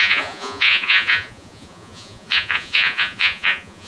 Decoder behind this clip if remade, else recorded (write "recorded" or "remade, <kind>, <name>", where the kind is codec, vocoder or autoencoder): remade, vocoder, Vocos